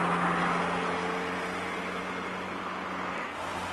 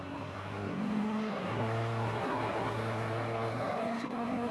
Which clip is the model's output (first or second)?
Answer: second